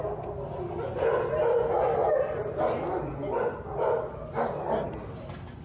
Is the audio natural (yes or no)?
yes